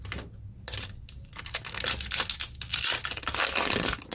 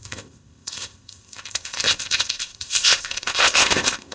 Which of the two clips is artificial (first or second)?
second